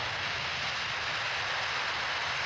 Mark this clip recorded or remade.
recorded